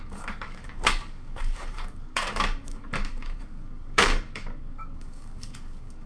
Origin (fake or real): fake